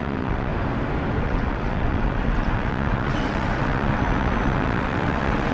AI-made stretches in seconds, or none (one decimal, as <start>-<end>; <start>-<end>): 0.0-0.5; 1.2-5.5